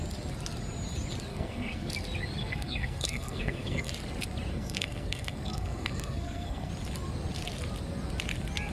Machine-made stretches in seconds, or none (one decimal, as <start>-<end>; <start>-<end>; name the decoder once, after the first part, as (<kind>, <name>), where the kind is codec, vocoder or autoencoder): 1.3-1.9 (codec, SNAC); 2.4-3.9; 4.5-6.7